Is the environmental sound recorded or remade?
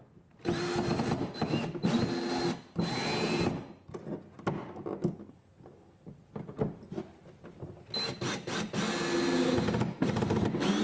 recorded